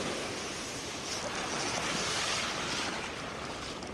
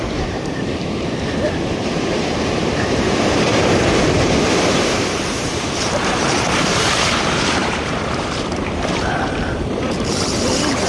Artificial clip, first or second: second